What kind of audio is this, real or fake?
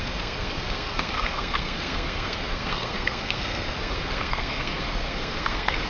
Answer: fake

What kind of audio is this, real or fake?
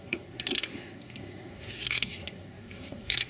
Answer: fake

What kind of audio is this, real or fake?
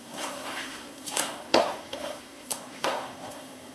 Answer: fake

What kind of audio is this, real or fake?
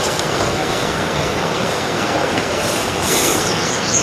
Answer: fake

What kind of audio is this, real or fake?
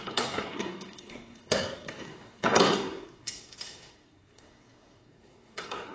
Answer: fake